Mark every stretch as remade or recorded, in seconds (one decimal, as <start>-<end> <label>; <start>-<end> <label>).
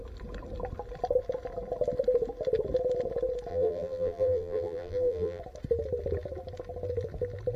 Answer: 0.0-3.5 recorded; 3.5-5.4 remade; 5.4-7.6 recorded